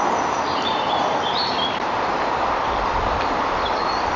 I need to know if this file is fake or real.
fake